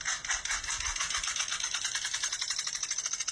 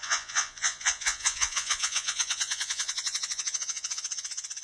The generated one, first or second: second